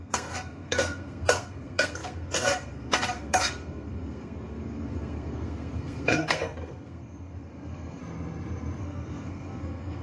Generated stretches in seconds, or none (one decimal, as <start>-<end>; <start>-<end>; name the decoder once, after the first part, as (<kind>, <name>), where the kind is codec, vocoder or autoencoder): 0.0-8.0 (codec, SNAC); 8.8-10.0